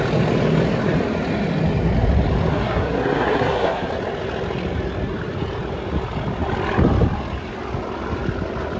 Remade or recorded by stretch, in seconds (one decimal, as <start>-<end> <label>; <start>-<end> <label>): 0.0-2.5 recorded; 2.5-3.9 remade; 3.9-8.8 recorded